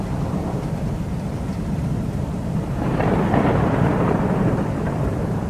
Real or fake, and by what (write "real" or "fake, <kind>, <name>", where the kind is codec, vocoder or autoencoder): fake, vocoder, BigVGAN v2